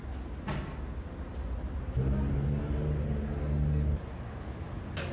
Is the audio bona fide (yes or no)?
yes